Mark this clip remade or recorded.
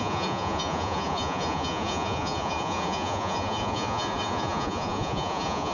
remade